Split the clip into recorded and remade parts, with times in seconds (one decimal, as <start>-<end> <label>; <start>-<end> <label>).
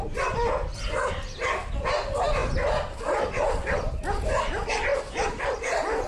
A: 0.0-4.9 recorded; 4.9-6.1 remade